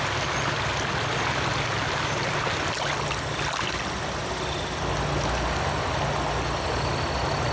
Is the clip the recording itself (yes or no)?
yes